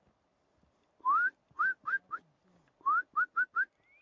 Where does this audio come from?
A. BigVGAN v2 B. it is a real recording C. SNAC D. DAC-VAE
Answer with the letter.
B